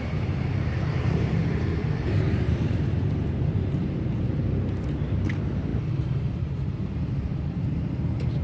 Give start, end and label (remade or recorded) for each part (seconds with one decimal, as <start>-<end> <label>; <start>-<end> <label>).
0.0-8.4 remade